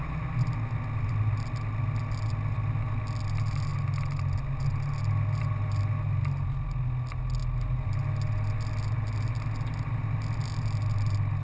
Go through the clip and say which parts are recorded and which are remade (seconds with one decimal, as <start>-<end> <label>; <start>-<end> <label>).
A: 0.0-11.4 recorded